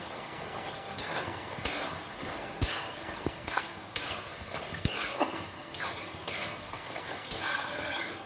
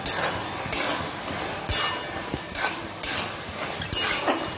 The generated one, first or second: first